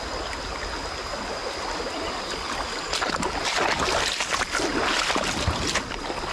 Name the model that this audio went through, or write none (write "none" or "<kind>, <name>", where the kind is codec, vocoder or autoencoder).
none